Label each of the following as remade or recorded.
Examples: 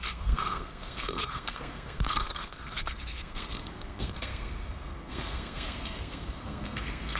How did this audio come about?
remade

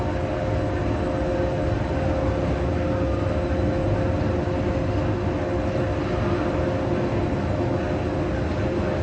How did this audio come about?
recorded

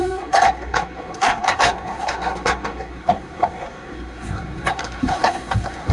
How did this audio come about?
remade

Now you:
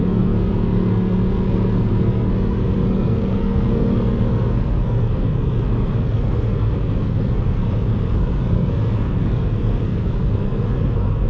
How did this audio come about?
remade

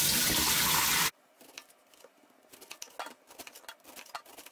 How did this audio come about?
recorded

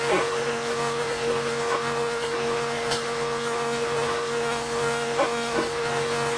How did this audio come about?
remade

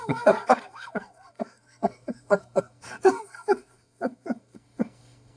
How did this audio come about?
remade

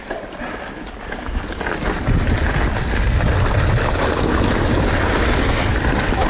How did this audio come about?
recorded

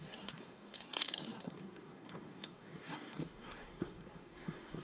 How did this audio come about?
remade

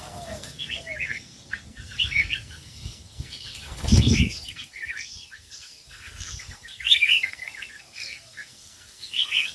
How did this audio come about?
remade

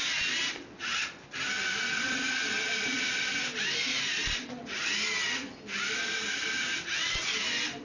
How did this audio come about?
recorded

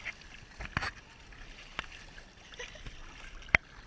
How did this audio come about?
recorded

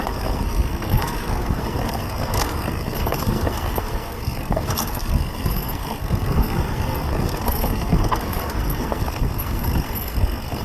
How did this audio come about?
remade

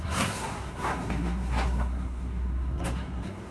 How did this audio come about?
remade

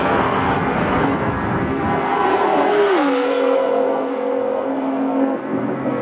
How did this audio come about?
remade